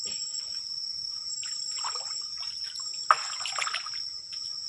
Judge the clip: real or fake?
real